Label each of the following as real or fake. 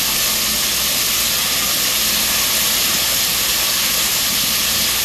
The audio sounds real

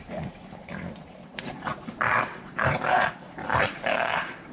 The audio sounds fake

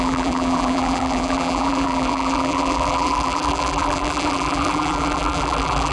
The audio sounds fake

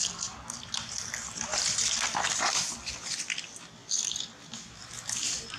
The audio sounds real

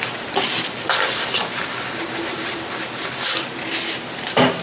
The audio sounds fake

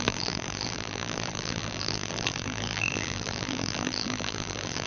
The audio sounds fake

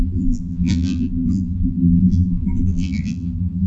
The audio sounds fake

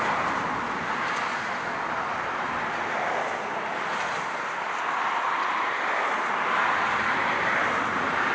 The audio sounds real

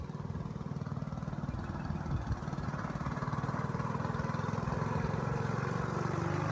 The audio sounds real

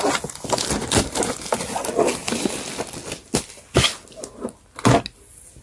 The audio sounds real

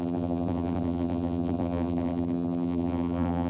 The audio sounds fake